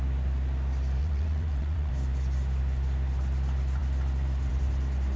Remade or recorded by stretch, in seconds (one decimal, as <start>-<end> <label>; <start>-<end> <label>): 0.0-1.0 recorded; 1.0-1.9 remade; 1.9-5.2 recorded